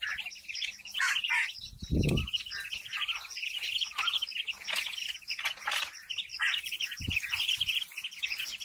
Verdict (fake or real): real